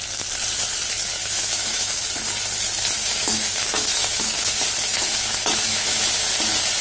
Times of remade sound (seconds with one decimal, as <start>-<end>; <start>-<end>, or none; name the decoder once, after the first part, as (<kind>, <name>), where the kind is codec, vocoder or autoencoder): 1.2-2.0 (autoencoder, DAC-VAE); 3.0-4.5; 4.9-6.0